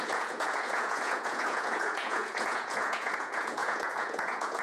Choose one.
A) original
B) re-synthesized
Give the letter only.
B